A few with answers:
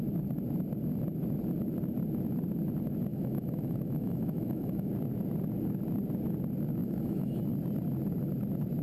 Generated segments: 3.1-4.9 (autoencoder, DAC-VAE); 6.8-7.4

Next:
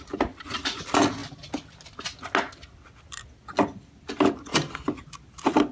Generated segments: none

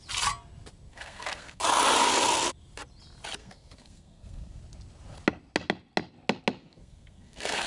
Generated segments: 0.9-1.6 (codec, SNAC); 3.4-4.6; 6.6-7.7

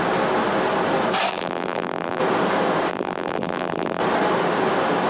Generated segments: 1.3-2.2 (vocoder, BigVGAN v2); 2.9-4.0

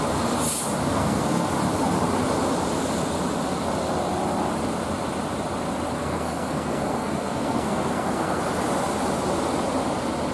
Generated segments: 1.0-1.5 (codec, SNAC); 6.0-8.4

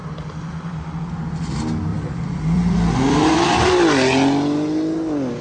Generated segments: 0.0-1.1 (vocoder, BigVGAN v2); 1.9-3.7

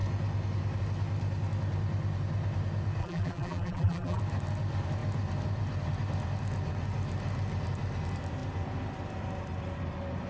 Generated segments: 3.0-4.2 (vocoder, BigVGAN v2)

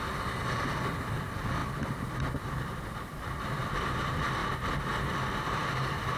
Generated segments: 0.0-1.6 (vocoder, BigVGAN v2); 2.5-4.4; 5.0-6.2